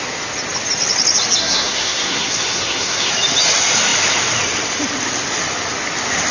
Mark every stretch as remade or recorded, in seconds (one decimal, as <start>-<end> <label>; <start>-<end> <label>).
0.0-1.4 recorded; 1.4-3.1 remade; 3.1-6.3 recorded